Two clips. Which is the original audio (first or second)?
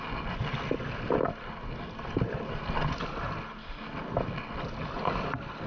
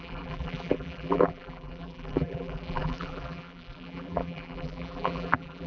first